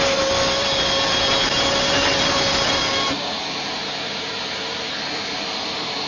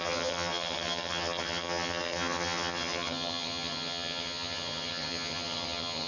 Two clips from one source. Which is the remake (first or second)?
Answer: second